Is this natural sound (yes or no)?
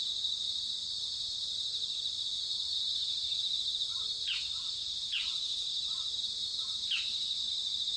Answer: yes